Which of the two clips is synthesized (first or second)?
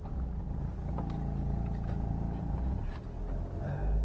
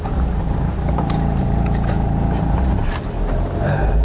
second